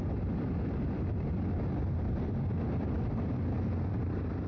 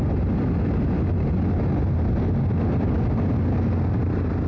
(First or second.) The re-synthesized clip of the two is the first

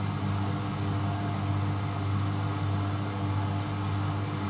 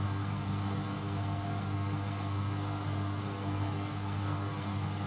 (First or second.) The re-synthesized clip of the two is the second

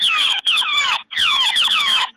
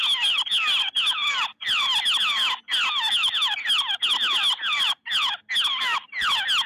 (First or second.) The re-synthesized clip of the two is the first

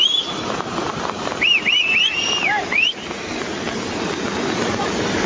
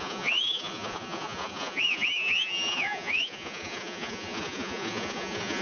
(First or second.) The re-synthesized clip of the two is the second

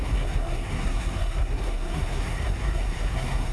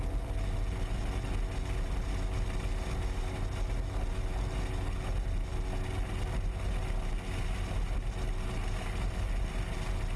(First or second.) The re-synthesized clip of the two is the first